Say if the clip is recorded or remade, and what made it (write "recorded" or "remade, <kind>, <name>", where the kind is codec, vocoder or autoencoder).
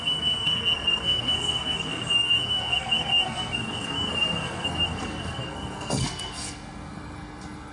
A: remade, codec, SNAC